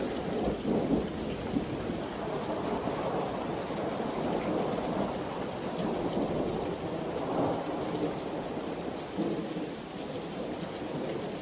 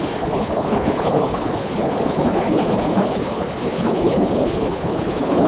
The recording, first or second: first